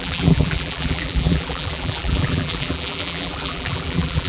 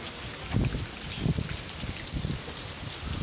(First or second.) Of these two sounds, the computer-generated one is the first